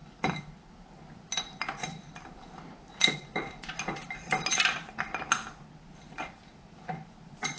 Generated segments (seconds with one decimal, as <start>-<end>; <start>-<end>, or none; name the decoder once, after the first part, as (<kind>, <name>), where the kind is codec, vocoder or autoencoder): none